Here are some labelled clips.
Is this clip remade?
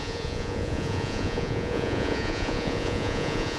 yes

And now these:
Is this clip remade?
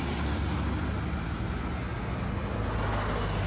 no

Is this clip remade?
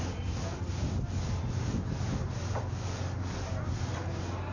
no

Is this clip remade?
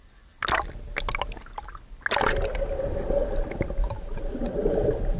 no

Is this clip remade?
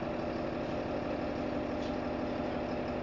no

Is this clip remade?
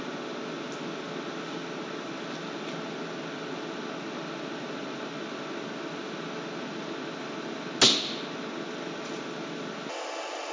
no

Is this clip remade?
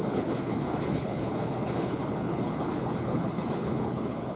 yes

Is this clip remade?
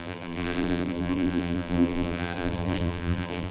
yes